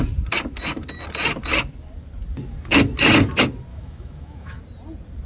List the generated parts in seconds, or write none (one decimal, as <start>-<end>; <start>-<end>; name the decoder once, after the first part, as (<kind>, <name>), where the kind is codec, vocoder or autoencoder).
3.7-4.6 (autoencoder, DAC-VAE)